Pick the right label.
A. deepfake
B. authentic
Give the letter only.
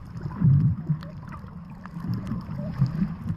B